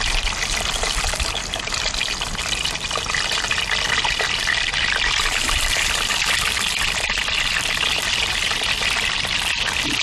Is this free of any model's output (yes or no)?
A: yes